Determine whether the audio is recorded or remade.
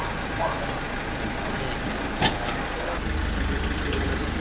recorded